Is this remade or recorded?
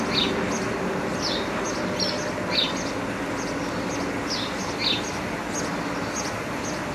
recorded